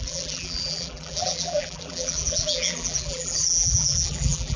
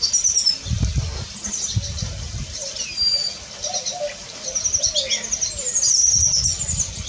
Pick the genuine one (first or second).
second